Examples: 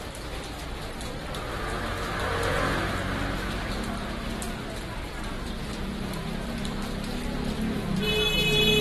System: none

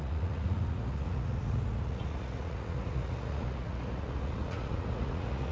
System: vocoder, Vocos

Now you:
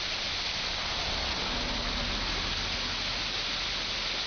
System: none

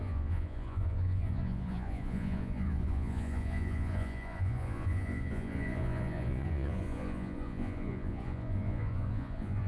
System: vocoder, Vocos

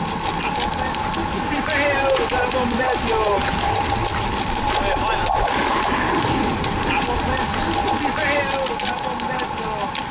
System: none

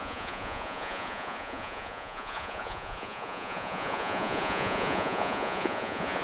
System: vocoder, Vocos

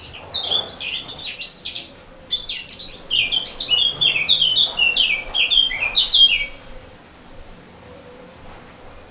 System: none